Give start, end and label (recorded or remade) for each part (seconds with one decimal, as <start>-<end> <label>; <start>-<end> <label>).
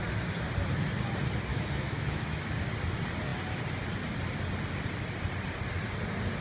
0.0-1.5 recorded; 1.5-2.5 remade; 2.5-6.4 recorded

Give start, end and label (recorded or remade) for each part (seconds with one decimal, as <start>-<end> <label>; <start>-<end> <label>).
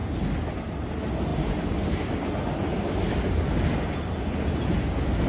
0.0-5.3 recorded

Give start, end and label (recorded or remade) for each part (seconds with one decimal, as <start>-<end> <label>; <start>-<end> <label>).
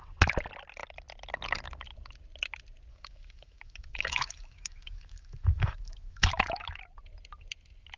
0.0-2.9 recorded; 2.9-6.8 remade; 6.8-8.0 recorded